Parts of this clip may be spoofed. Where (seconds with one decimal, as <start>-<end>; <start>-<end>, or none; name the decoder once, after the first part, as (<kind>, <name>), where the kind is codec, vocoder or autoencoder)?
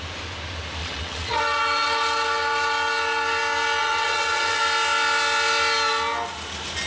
0.8-1.4 (vocoder, WaveNeXt); 3.8-4.6